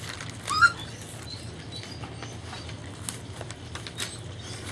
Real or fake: real